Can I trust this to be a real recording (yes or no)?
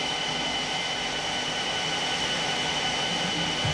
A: yes